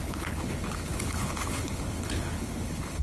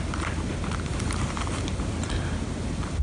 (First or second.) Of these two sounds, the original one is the second